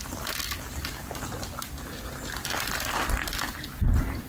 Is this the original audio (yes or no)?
yes